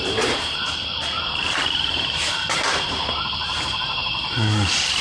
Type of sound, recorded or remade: remade